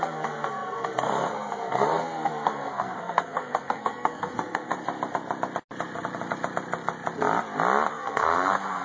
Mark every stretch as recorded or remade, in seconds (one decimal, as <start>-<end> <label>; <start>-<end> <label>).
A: 0.0-4.7 remade; 4.7-7.9 recorded; 7.9-8.8 remade

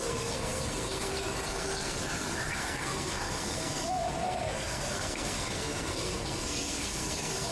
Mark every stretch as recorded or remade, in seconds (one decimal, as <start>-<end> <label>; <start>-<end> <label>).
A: 0.0-7.5 remade

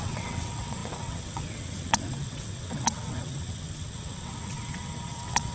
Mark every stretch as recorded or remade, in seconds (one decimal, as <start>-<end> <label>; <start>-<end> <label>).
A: 0.0-5.5 remade

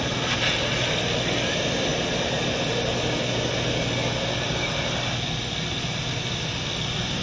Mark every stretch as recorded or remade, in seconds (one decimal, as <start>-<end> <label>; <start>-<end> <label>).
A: 0.0-1.9 remade; 1.9-6.2 recorded; 6.2-7.2 remade